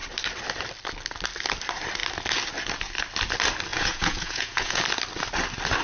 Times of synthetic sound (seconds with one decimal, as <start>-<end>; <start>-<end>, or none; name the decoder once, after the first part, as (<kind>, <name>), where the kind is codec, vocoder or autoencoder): 3.7-4.8 (vocoder, Vocos)